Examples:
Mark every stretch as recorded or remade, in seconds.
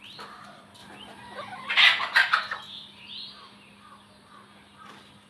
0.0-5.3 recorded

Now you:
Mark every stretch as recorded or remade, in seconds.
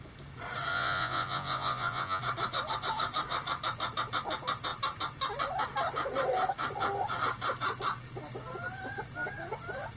0.0-0.7 recorded; 0.7-2.2 remade; 2.2-10.0 recorded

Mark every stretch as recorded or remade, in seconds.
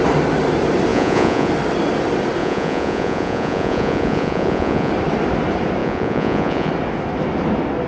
0.0-0.9 recorded; 0.9-1.5 remade; 1.5-2.4 recorded; 2.4-4.9 remade; 4.9-5.8 recorded; 5.8-6.7 remade; 6.7-7.9 recorded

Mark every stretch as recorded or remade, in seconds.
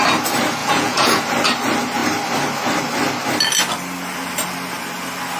0.0-0.6 recorded; 0.6-1.2 remade; 1.2-5.4 recorded